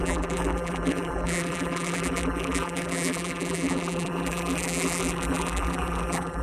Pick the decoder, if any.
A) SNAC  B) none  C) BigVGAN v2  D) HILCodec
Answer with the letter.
C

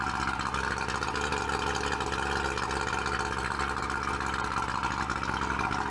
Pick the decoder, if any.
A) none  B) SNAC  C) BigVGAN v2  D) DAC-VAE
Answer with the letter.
A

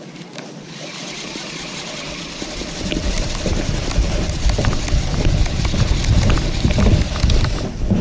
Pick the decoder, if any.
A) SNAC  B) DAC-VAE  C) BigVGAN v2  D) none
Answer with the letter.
D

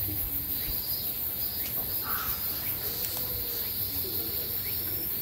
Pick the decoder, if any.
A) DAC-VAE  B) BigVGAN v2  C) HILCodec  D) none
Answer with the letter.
D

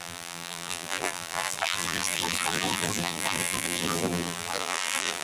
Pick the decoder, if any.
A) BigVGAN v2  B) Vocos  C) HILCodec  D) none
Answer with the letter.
A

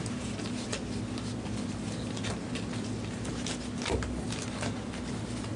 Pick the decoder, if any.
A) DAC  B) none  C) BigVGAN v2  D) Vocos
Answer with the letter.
B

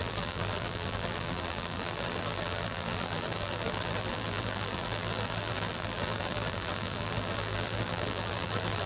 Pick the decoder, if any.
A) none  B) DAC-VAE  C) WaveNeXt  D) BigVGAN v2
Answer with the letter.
D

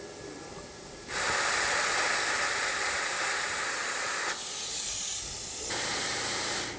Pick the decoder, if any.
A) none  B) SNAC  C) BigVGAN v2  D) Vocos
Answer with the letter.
C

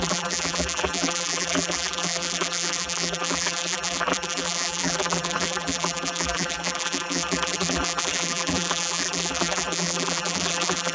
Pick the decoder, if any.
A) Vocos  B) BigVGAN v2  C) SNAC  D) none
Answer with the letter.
B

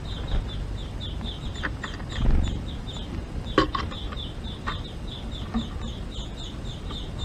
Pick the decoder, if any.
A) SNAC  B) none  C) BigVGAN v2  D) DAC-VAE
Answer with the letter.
B